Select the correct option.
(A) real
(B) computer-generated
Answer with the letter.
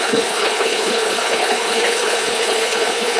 B